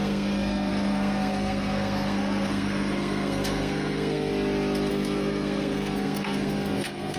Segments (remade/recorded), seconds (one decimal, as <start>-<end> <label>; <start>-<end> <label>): 0.0-4.3 remade; 4.3-4.9 recorded; 4.9-7.2 remade